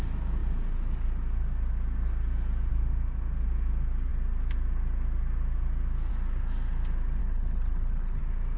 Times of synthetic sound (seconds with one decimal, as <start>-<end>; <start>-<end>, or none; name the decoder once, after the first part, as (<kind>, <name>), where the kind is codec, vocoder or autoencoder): 7.2-8.2 (codec, HILCodec)